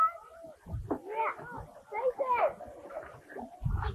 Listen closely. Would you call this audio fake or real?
real